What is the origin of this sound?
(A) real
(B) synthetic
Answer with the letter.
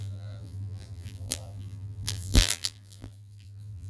B